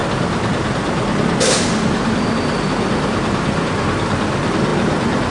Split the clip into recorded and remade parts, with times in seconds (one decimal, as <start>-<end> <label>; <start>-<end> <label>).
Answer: 0.0-5.3 recorded